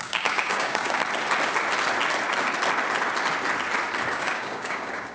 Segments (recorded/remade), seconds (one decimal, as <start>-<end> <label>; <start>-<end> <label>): 0.0-1.0 remade; 1.0-4.1 recorded; 4.1-5.1 remade